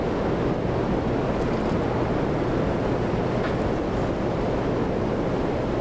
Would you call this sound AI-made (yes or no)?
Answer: no